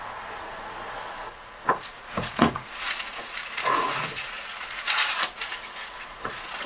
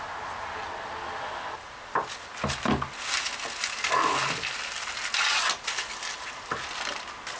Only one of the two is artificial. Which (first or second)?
first